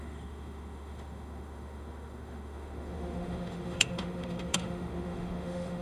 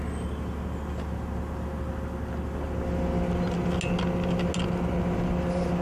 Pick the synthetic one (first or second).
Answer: first